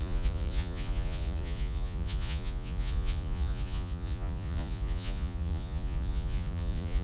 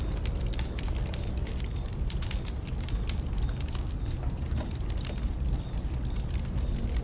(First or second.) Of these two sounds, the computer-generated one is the first